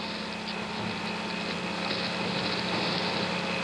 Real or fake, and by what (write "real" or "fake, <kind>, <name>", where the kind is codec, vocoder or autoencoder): real